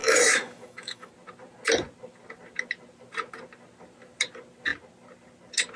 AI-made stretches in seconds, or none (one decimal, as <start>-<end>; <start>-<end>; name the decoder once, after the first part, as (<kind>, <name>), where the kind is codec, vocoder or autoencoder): 0.0-1.1 (autoencoder, DAC-VAE)